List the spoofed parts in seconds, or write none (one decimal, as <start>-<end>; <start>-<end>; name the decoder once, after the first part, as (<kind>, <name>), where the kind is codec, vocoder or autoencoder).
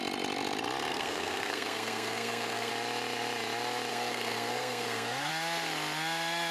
0.9-2.7 (codec, SNAC); 3.9-5.3